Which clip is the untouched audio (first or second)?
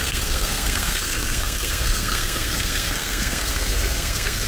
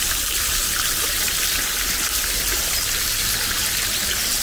second